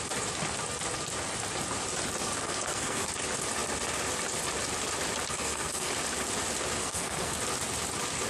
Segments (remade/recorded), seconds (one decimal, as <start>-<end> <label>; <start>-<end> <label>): 0.0-2.4 recorded; 2.4-3.1 remade; 3.1-5.3 recorded; 5.3-5.9 remade; 5.9-6.8 recorded; 6.8-7.4 remade; 7.4-8.3 recorded